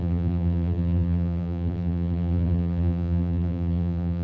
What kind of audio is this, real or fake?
fake